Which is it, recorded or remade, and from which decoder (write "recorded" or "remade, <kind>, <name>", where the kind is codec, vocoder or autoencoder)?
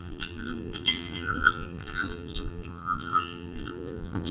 remade, vocoder, BigVGAN v2